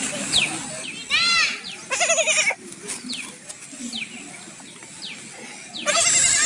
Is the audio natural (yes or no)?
yes